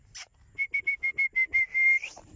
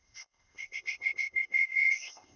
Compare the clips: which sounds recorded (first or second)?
first